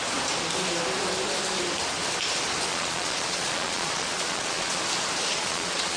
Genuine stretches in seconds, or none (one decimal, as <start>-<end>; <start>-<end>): 0.0-2.7; 4.8-5.3